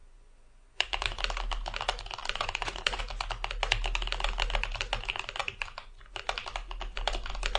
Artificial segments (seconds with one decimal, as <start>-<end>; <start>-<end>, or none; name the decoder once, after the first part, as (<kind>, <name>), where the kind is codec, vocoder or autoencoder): 0.0-1.2 (vocoder, Vocos); 2.2-3.0; 5.4-6.0